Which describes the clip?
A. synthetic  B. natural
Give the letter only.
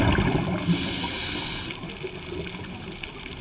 B